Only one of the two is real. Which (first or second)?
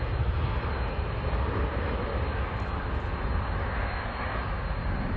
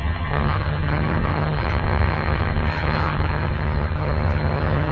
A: first